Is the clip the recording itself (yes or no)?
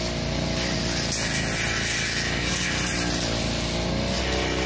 yes